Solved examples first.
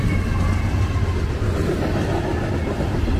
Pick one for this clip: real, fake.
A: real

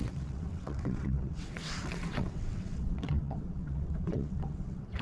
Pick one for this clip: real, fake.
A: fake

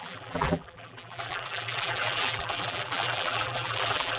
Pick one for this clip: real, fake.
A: fake